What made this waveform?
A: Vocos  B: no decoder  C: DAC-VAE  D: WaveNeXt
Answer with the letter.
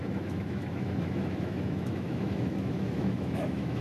C